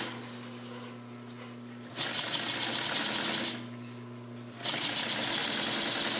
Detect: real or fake real